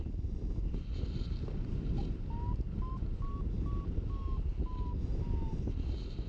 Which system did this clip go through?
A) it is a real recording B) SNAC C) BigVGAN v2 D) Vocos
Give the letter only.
A